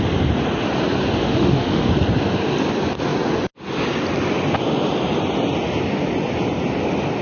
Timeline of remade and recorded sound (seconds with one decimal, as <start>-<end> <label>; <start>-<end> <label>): 0.0-1.2 recorded; 1.2-1.9 remade; 1.9-7.2 recorded

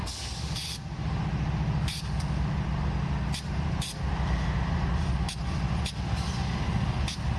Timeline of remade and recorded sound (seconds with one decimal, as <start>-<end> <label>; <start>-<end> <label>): 0.0-7.4 recorded